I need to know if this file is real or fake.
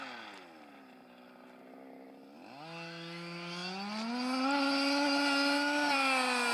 real